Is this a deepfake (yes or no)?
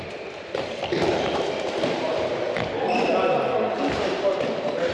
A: yes